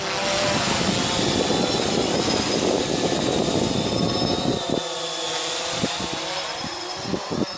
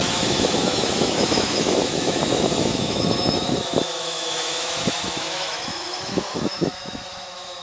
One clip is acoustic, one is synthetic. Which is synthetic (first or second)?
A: second